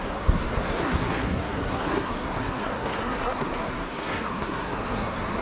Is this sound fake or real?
fake